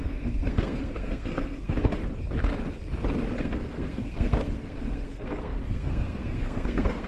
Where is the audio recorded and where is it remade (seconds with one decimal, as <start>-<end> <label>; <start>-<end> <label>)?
0.0-2.0 remade; 2.0-3.4 recorded; 3.4-7.1 remade